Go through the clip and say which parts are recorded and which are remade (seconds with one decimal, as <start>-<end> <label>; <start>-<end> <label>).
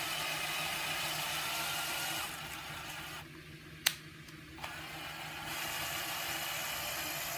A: 0.0-7.4 recorded